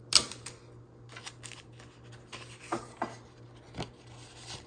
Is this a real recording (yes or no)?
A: yes